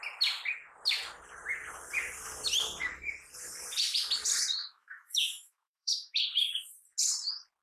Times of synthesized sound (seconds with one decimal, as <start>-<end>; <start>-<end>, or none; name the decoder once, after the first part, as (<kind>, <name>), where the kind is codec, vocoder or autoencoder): 4.6-6.2 (autoencoder, DAC-VAE)